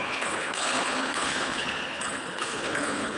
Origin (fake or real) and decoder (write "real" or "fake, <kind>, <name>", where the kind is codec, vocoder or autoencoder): fake, codec, HILCodec